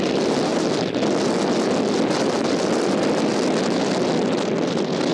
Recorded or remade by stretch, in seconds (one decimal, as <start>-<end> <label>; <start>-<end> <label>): 0.0-5.1 recorded